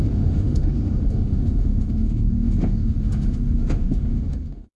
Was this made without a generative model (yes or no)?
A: no